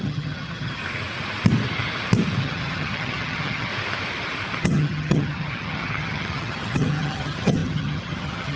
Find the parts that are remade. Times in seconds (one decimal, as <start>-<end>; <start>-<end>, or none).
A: 0.0-0.8; 2.4-3.7; 4.6-8.6